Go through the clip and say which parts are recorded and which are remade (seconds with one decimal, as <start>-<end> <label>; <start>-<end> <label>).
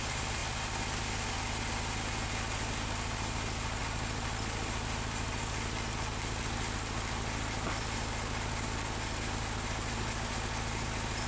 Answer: 0.0-11.3 recorded